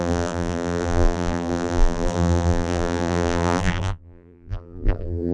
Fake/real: fake